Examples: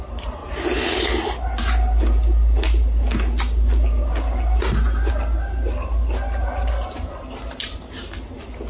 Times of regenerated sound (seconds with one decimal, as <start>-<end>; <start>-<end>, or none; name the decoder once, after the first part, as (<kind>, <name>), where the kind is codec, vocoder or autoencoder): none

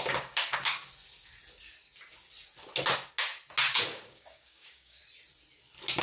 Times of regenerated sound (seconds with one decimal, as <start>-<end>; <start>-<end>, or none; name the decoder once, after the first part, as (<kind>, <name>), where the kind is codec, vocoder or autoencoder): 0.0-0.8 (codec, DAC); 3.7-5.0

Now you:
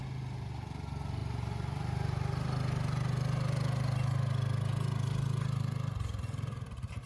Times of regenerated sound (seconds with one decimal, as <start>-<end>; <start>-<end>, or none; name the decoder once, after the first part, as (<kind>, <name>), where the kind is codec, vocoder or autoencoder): none